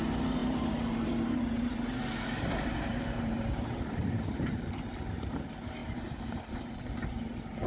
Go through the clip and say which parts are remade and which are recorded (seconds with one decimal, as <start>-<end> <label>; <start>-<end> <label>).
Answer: 0.0-7.7 remade